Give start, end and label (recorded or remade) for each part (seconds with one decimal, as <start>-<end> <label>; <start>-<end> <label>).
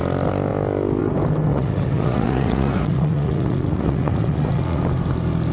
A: 0.0-1.5 recorded; 1.5-4.8 remade; 4.8-5.5 recorded